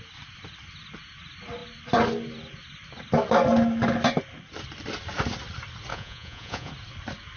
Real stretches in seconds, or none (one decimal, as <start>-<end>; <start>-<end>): 0.0-5.9; 6.7-7.4